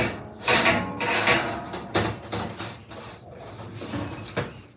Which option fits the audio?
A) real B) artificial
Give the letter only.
A